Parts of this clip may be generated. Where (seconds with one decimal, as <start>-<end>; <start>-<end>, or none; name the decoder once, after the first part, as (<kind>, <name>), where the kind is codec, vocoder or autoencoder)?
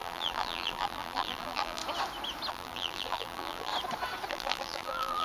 0.0-1.8 (vocoder, BigVGAN v2); 2.5-3.7; 4.3-5.2